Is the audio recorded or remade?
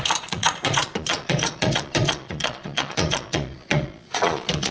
remade